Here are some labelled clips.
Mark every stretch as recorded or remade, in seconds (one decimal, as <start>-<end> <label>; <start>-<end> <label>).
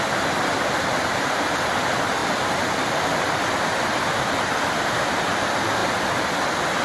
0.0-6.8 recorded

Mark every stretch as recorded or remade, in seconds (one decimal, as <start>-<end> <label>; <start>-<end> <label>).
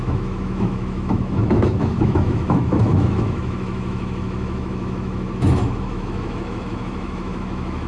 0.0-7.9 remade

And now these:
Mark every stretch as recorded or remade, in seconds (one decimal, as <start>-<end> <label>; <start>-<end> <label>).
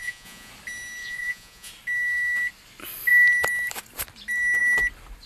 0.0-0.5 remade; 0.5-1.0 recorded; 1.0-1.7 remade; 1.7-5.3 recorded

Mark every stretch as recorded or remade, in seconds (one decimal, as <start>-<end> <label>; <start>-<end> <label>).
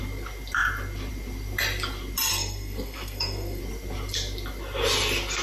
0.0-2.3 recorded; 2.3-3.6 remade; 3.6-5.4 recorded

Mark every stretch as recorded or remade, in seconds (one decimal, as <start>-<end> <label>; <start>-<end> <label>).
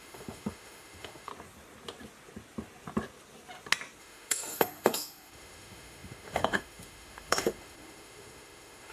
0.0-1.3 remade; 1.3-4.0 recorded; 4.0-8.9 remade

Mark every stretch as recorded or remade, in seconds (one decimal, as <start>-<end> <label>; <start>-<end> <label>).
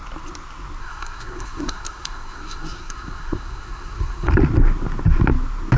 0.0-0.8 recorded; 0.8-4.3 remade; 4.3-5.8 recorded